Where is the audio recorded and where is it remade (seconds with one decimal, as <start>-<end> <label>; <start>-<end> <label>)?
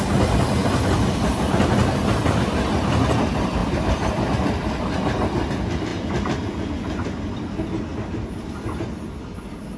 0.0-0.6 recorded; 0.6-1.4 remade; 1.4-3.6 recorded; 3.6-4.7 remade; 4.7-9.8 recorded